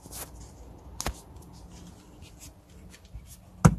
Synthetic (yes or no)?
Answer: no